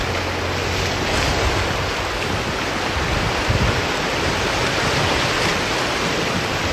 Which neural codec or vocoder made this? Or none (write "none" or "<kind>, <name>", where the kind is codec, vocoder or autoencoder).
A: none